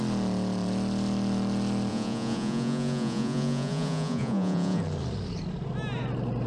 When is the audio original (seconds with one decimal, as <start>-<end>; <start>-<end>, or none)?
0.0-1.9; 4.8-6.5